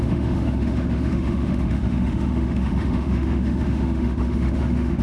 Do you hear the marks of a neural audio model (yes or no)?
yes